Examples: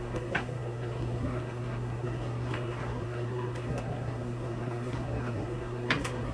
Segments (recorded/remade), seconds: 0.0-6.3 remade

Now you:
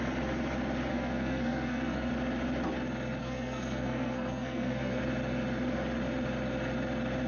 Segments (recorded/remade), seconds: 0.0-0.9 recorded; 0.9-2.1 remade; 2.1-3.2 recorded; 3.2-5.0 remade; 5.0-7.3 recorded

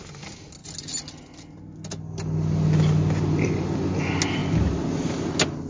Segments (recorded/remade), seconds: 0.0-5.7 recorded

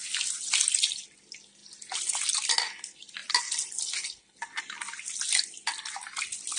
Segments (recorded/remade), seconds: 0.0-6.6 recorded

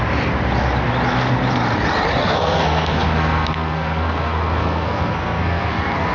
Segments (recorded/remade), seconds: 0.0-2.2 recorded; 2.2-6.1 remade